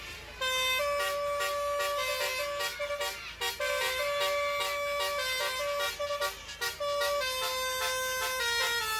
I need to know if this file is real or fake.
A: real